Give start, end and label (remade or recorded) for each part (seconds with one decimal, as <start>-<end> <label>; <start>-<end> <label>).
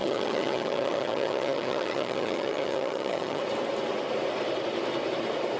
0.0-3.4 remade; 3.4-5.6 recorded